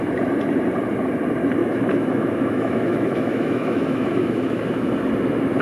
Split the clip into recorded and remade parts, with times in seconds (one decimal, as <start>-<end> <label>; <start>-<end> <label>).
0.0-1.6 recorded; 1.6-4.9 remade; 4.9-5.6 recorded